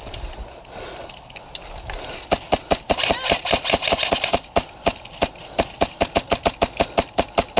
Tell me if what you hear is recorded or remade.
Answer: recorded